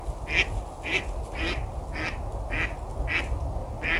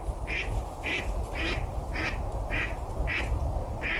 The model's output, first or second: second